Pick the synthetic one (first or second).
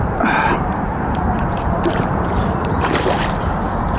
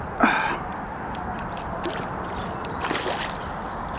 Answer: first